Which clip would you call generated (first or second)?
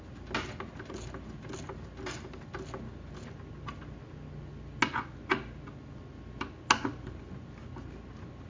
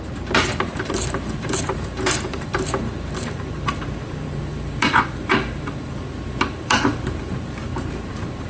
second